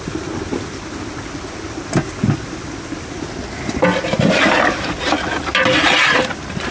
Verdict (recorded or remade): recorded